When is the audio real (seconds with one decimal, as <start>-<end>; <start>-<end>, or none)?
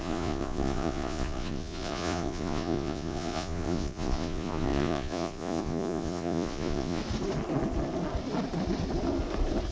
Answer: 7.0-9.7